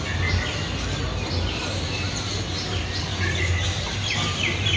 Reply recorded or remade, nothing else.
recorded